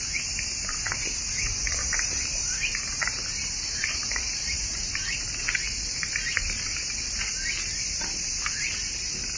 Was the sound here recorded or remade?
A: remade